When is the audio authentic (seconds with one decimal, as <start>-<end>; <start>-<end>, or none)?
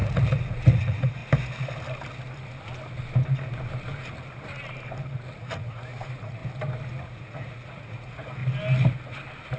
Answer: 1.2-5.4; 6.4-7.0; 8.4-9.6